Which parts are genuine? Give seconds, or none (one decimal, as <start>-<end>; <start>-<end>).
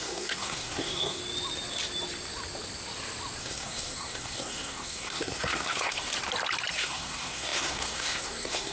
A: 1.2-3.4; 6.1-6.7